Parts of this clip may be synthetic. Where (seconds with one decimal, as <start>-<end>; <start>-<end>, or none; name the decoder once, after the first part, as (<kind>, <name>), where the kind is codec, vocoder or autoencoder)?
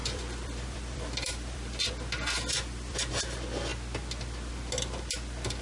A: 0.0-1.9 (vocoder, BigVGAN v2); 2.5-3.1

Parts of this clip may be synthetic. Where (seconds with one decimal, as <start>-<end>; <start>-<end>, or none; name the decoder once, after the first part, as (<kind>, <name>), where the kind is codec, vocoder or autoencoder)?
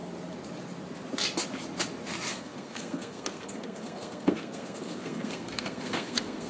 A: 2.3-6.5 (codec, SNAC)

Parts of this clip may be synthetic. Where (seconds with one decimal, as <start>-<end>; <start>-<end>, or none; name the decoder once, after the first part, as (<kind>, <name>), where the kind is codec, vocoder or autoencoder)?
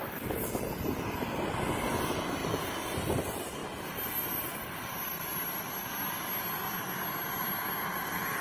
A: none